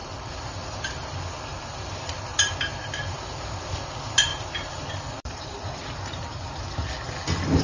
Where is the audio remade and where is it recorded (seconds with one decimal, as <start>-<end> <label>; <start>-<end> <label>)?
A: 0.0-2.3 recorded; 2.3-2.9 remade; 2.9-4.3 recorded; 4.3-6.6 remade; 6.6-7.6 recorded